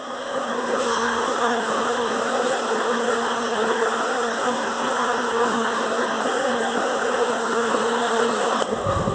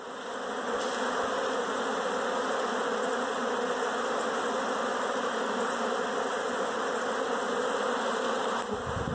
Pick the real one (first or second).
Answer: second